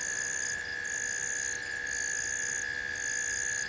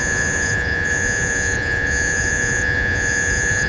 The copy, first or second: second